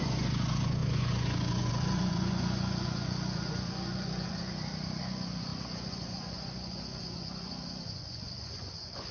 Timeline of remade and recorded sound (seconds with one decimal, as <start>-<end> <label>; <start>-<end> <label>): 0.0-4.5 remade; 4.5-5.0 recorded; 5.0-9.1 remade

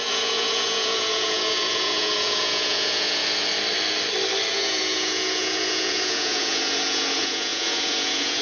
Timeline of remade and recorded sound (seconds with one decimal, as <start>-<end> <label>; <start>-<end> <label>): 0.0-3.2 remade; 3.2-4.5 recorded; 4.5-8.4 remade

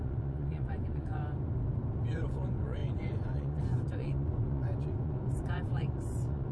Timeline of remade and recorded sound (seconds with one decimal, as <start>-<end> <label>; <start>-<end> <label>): 0.0-1.2 remade; 1.2-2.1 recorded; 2.1-6.5 remade

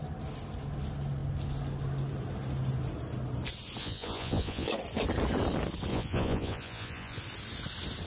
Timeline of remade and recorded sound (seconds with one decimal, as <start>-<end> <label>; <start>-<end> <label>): 0.0-3.8 recorded; 3.8-4.7 remade; 4.7-5.9 recorded; 5.9-7.2 remade; 7.2-8.1 recorded

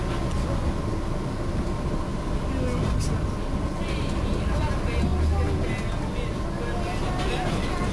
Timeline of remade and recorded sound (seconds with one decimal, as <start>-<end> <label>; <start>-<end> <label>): 0.0-7.9 recorded

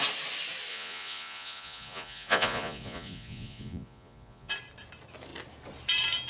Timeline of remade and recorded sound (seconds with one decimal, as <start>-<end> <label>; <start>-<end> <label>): 0.0-0.7 recorded; 0.7-4.5 remade; 4.5-6.3 recorded

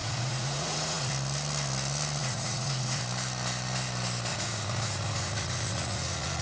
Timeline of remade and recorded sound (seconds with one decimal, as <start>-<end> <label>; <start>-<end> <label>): 0.0-1.1 remade; 1.1-2.2 recorded; 2.2-3.0 remade; 3.0-4.3 recorded; 4.3-6.4 remade

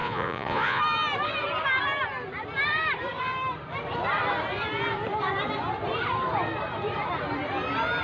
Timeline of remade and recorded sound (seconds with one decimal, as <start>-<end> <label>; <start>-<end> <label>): 0.0-0.8 remade; 0.8-8.0 recorded